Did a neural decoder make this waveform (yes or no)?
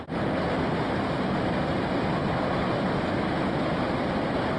no